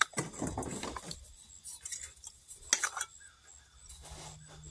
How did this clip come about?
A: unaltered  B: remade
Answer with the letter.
A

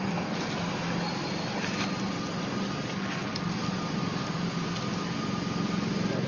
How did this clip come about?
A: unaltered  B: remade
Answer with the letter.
A